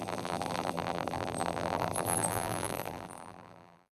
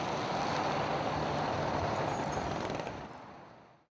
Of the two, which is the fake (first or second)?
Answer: first